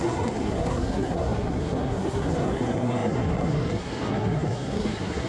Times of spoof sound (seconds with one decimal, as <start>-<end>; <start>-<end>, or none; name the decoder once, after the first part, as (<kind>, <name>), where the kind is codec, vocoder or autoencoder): 0.0-5.3 (codec, SNAC)